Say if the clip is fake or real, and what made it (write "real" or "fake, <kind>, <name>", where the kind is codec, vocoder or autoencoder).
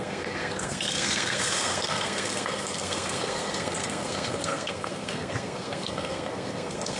fake, codec, SNAC